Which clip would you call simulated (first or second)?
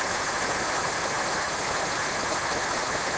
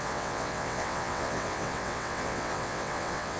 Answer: second